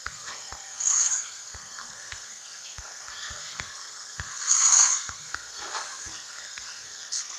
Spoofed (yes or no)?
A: yes